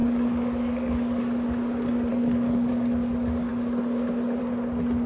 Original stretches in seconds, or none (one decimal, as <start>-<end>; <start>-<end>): 1.2-2.1; 2.7-5.1